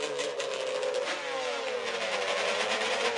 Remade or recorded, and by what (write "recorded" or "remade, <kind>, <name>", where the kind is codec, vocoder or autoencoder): recorded